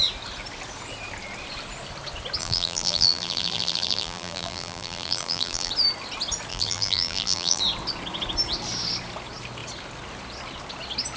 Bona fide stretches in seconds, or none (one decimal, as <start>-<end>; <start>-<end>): 0.0-2.4; 5.7-6.5; 7.6-11.2